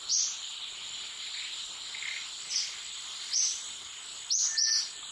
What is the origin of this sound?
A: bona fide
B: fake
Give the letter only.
A